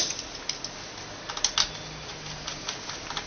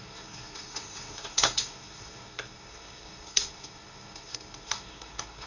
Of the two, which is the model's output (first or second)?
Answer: second